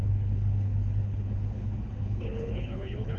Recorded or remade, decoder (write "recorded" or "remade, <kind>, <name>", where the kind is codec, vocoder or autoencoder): remade, codec, HILCodec